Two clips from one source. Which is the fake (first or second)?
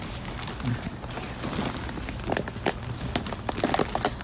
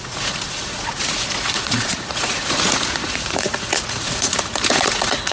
second